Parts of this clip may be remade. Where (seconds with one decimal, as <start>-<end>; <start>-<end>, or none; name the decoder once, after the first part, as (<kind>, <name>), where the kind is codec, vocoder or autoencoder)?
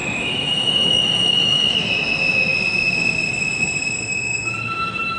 0.0-1.9 (autoencoder, DAC-VAE); 4.1-5.2